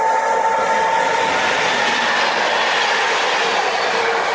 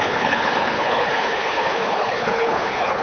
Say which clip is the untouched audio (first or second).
first